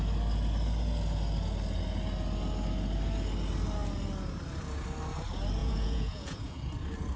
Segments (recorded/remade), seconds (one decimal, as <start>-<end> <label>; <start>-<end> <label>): 0.0-5.6 recorded; 5.6-6.6 remade; 6.6-7.2 recorded